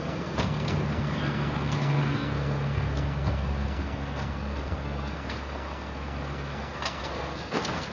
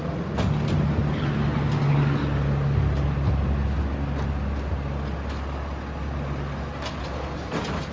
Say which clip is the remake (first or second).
first